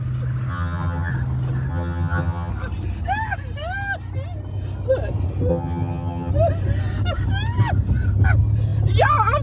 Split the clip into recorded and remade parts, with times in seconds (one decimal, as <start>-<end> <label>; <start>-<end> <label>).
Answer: 0.0-0.5 recorded; 0.5-1.1 remade; 1.1-1.7 recorded; 1.7-2.5 remade; 2.5-5.5 recorded; 5.5-6.3 remade; 6.3-9.4 recorded